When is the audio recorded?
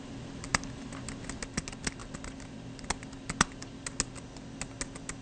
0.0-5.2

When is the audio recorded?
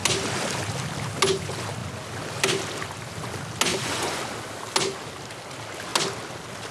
0.0-3.7; 4.2-6.7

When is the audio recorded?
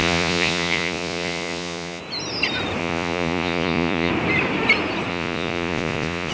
2.0-2.8; 4.1-5.1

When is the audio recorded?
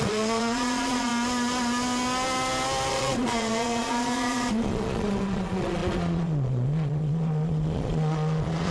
1.1-2.9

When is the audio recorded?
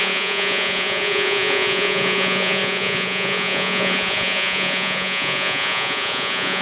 none